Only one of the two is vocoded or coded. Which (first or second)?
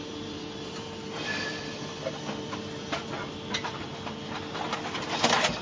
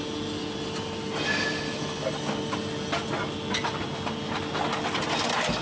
first